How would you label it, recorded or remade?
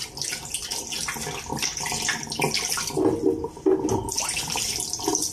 recorded